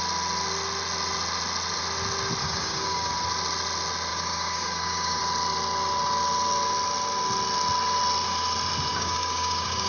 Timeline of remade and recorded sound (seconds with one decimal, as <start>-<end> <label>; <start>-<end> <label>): 0.0-2.4 recorded; 2.4-3.1 remade; 3.1-4.1 recorded; 4.1-5.2 remade; 5.2-8.9 recorded; 8.9-9.9 remade

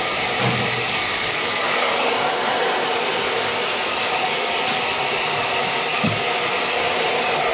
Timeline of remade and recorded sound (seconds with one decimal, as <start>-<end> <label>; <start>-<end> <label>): 0.0-0.7 recorded; 0.7-2.5 remade; 2.5-5.9 recorded; 5.9-6.4 remade; 6.4-7.5 recorded

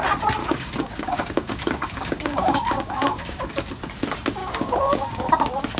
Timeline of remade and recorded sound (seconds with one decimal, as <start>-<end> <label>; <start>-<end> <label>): 0.0-0.4 recorded; 0.4-3.7 remade; 3.7-4.4 recorded; 4.4-5.3 remade; 5.3-5.8 recorded

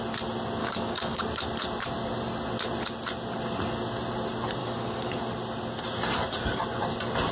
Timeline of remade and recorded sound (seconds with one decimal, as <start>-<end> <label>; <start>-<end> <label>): 0.0-0.6 recorded; 0.6-1.2 remade; 1.2-4.6 recorded; 4.6-5.2 remade; 5.2-7.3 recorded

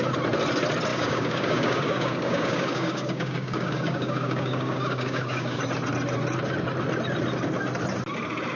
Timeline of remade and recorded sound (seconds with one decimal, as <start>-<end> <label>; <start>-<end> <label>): 0.0-0.9 recorded; 0.9-5.6 remade; 5.6-8.6 recorded